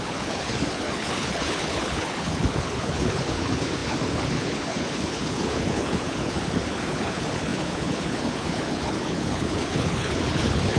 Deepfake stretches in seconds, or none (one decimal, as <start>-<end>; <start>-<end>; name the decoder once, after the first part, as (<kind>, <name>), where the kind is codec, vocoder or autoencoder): 0.0-10.8 (codec, HILCodec)